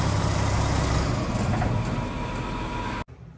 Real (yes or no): yes